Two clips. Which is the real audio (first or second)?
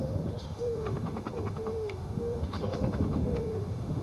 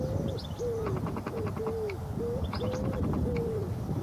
second